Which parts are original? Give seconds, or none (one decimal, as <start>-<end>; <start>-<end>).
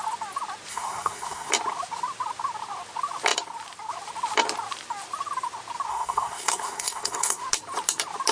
0.0-0.7; 1.5-5.9; 7.4-8.3